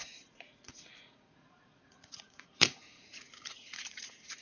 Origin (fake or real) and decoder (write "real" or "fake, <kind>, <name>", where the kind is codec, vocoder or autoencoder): fake, vocoder, Vocos